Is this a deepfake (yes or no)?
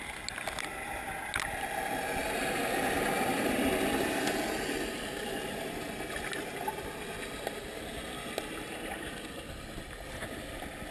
no